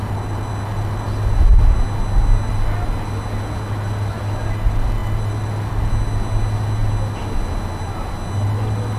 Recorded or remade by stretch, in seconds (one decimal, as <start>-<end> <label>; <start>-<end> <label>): 0.0-9.0 recorded